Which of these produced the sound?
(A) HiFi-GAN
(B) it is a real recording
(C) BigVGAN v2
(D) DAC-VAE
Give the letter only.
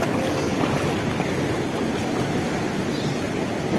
B